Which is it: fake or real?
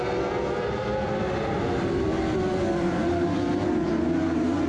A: real